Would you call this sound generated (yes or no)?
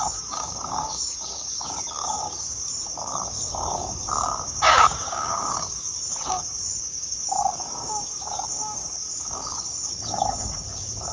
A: yes